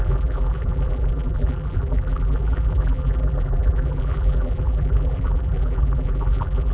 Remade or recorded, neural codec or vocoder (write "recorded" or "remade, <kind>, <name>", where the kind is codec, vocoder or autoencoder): remade, vocoder, BigVGAN v2